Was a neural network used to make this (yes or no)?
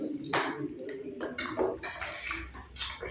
no